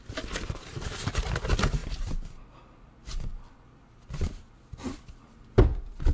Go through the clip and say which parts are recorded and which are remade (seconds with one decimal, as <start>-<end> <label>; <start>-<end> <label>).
0.0-6.1 recorded